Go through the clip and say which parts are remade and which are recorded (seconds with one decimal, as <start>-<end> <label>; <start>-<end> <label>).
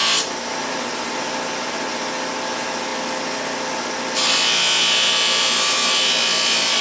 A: 0.0-6.8 recorded